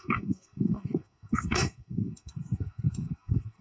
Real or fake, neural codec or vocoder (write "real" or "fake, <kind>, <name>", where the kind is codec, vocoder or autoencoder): fake, codec, SNAC